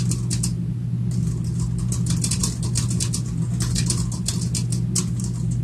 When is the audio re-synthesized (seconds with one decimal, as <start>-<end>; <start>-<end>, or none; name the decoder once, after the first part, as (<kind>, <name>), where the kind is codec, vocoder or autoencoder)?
none